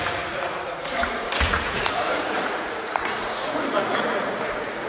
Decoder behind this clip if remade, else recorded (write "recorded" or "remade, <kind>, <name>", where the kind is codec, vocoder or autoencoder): remade, vocoder, Vocos